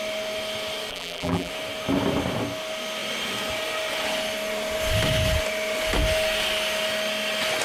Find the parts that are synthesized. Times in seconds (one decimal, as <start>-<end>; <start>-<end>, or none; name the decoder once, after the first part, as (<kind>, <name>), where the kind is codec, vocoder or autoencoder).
0.9-1.5 (vocoder, BigVGAN v2)